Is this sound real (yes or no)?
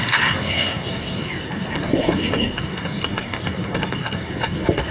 no